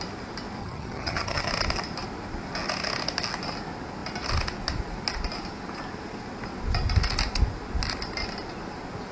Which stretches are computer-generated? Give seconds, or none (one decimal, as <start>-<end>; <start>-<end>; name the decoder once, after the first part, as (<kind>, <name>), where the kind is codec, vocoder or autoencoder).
0.6-1.5 (vocoder, HiFi-GAN)